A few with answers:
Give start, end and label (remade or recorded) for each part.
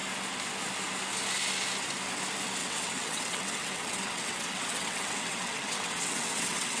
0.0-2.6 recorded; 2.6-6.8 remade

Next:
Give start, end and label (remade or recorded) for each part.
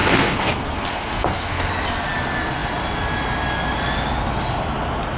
0.0-1.7 remade; 1.7-5.2 recorded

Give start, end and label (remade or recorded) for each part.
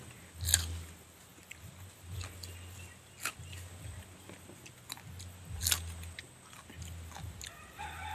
0.0-8.1 recorded